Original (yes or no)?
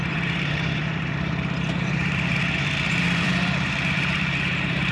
no